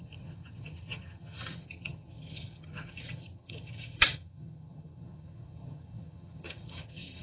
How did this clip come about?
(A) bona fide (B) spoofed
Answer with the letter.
B